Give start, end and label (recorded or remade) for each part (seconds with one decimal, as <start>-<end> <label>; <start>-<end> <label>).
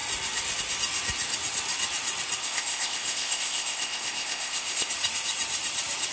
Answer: 0.0-2.4 recorded; 2.4-4.9 remade; 4.9-6.1 recorded